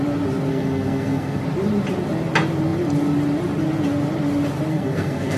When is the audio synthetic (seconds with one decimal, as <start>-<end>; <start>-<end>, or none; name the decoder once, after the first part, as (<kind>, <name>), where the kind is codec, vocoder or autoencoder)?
0.5-1.4 (codec, SNAC); 4.7-5.4